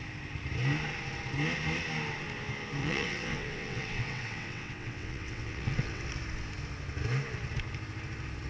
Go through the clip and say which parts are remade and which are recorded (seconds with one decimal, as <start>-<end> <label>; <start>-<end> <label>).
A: 0.0-2.8 recorded; 2.8-6.0 remade; 6.0-8.5 recorded

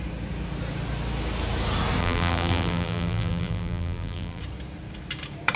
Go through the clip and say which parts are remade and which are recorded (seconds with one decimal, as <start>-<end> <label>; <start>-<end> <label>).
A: 0.0-2.0 recorded; 2.0-4.4 remade; 4.4-5.6 recorded

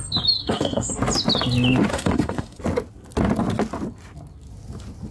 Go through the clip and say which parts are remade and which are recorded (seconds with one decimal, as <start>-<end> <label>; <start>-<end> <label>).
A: 0.0-0.4 recorded; 0.4-0.9 remade; 0.9-1.9 recorded; 1.9-2.6 remade; 2.6-5.1 recorded